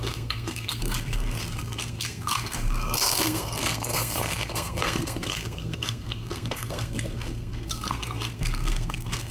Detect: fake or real fake